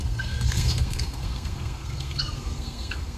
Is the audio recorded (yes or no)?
no